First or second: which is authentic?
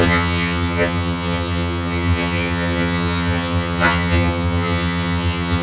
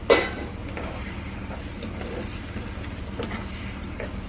second